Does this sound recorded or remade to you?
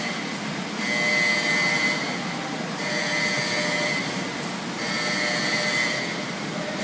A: recorded